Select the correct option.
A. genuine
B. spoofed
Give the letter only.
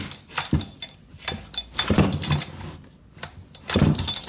A